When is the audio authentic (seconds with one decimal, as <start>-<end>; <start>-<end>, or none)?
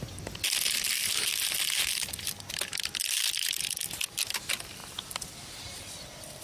0.0-6.4